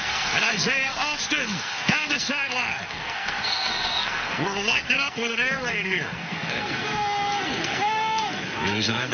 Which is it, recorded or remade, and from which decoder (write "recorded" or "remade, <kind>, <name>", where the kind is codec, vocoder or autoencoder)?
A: remade, codec, SNAC